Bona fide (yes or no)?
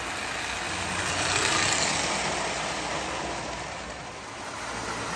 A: yes